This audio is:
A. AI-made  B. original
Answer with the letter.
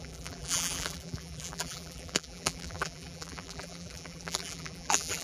A